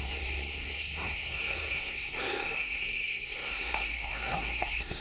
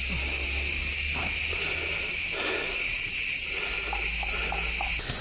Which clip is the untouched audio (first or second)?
second